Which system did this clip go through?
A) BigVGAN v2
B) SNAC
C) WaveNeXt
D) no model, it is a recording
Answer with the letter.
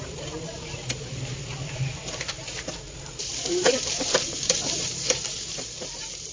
A